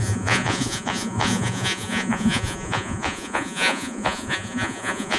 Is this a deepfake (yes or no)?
yes